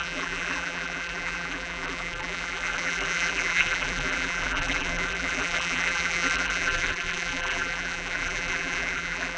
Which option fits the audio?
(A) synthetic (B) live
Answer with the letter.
A